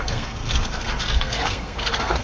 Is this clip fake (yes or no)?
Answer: yes